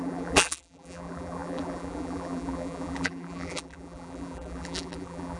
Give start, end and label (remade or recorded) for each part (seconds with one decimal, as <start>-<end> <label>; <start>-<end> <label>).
0.0-5.4 remade